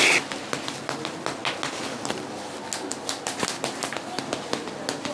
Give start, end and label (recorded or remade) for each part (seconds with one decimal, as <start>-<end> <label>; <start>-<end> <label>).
0.0-5.1 recorded